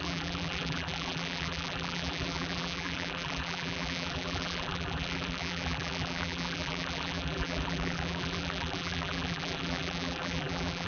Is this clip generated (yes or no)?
yes